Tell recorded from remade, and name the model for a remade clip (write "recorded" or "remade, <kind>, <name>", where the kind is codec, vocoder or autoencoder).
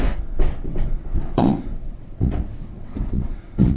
remade, vocoder, WaveNeXt